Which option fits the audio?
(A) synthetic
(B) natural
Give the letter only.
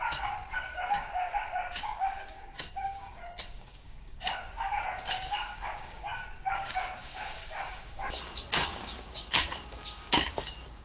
A